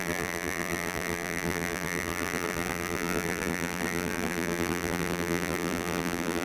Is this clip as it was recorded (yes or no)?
no